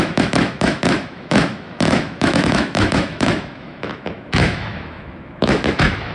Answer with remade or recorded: remade